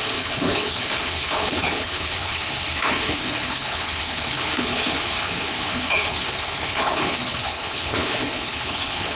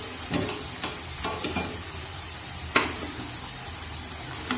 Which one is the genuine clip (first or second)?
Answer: second